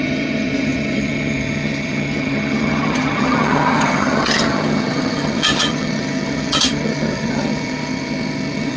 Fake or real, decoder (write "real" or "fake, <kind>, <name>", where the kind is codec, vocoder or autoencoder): fake, vocoder, HiFi-GAN